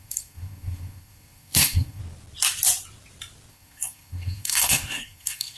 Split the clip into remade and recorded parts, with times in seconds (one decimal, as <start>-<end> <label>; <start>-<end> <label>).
0.0-2.0 remade; 2.0-3.5 recorded; 3.5-5.6 remade